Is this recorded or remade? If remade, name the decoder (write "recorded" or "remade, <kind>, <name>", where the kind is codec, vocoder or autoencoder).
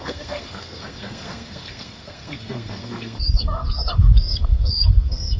remade, codec, SNAC